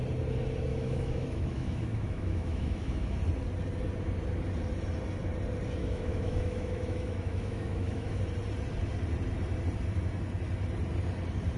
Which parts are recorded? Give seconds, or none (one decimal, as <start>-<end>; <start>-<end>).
0.0-0.7; 3.2-5.8; 8.2-11.6